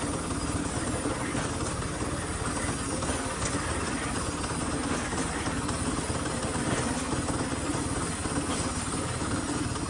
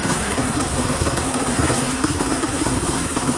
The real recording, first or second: first